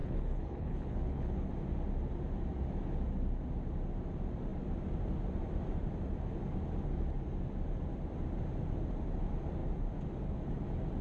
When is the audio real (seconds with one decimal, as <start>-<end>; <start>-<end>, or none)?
1.5-11.0